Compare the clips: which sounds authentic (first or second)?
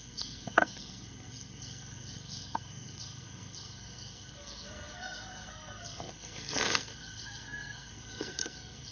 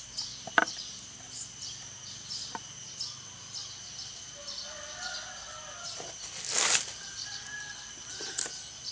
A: second